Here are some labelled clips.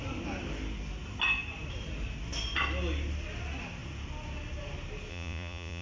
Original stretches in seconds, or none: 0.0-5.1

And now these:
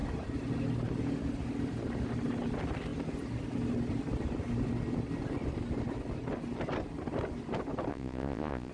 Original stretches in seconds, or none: 0.0-7.9

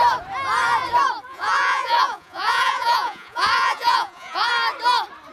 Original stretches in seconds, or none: 0.0-1.3; 4.5-5.3

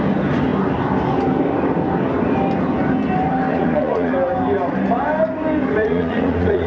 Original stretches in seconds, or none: 0.0-3.5; 4.1-5.9

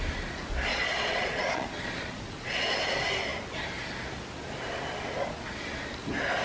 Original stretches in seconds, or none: 0.0-0.7; 2.8-6.4

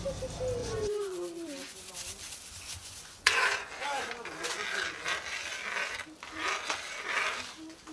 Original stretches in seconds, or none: 0.0-0.6; 1.9-2.8; 3.7-7.9